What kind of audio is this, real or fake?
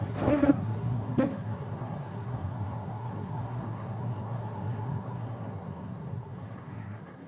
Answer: fake